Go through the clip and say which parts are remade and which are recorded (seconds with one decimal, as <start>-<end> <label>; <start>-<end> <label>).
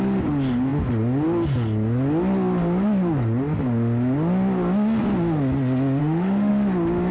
0.0-6.0 recorded; 6.0-6.5 remade; 6.5-7.1 recorded